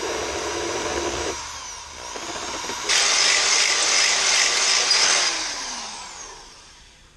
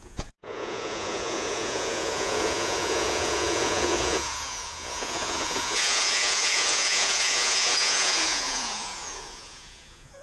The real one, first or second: first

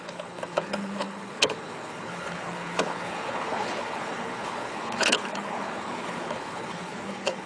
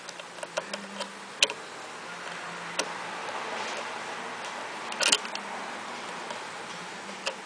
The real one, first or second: second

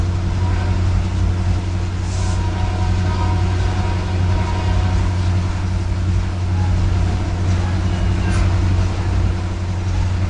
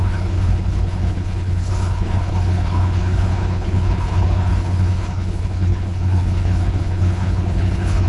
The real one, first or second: first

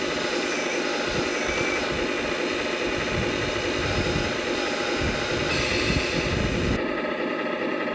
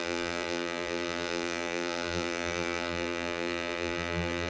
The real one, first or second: first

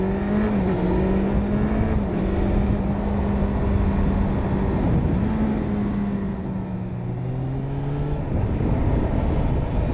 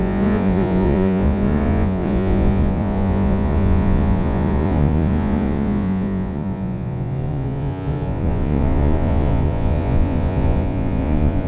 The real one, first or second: first